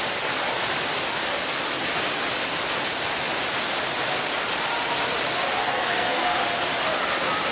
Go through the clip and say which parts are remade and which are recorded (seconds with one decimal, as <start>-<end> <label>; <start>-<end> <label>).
0.0-5.6 recorded; 5.6-6.4 remade; 6.4-7.5 recorded